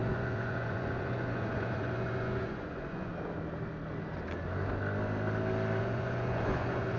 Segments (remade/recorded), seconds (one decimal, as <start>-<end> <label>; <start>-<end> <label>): 0.0-3.1 remade; 3.1-5.8 recorded; 5.8-7.0 remade

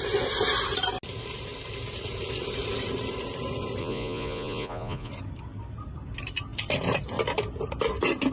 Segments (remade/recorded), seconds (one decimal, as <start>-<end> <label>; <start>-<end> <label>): 0.0-3.8 recorded; 3.8-5.1 remade; 5.1-8.3 recorded